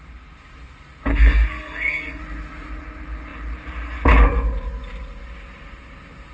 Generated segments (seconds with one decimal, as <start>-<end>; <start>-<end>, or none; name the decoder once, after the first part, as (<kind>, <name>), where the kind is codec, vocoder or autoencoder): 1.1-2.2 (codec, SNAC)